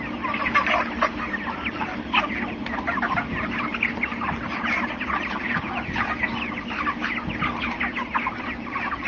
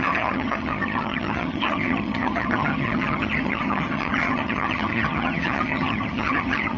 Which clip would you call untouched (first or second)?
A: first